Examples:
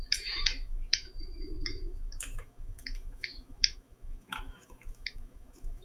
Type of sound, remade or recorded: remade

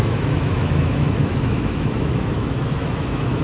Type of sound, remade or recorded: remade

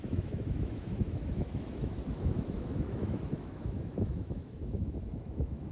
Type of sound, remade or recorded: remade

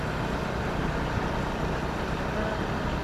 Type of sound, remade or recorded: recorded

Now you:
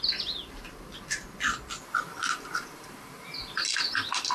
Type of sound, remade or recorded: recorded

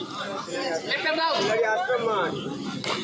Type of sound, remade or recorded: recorded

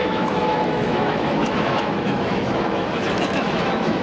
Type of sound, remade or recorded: remade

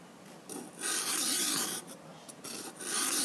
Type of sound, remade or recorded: recorded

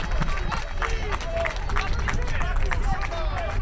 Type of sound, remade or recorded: recorded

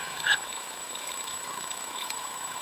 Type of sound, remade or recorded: remade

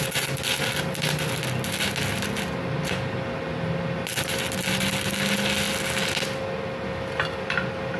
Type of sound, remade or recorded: recorded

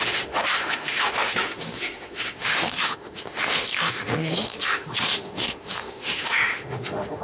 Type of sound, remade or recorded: remade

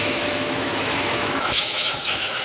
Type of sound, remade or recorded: remade